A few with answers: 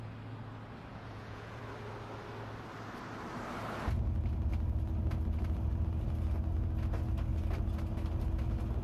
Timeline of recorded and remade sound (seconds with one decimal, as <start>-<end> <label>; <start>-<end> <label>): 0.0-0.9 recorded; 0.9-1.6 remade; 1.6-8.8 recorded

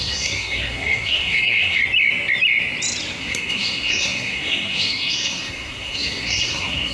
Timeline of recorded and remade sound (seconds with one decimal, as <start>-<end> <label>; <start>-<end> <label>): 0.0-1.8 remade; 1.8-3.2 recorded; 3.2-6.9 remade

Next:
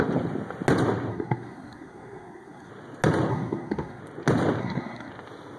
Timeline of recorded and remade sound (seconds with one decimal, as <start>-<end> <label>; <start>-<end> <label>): 0.0-1.1 recorded; 1.1-2.7 remade; 2.7-3.3 recorded; 3.3-4.0 remade; 4.0-4.6 recorded; 4.6-5.1 remade; 5.1-5.6 recorded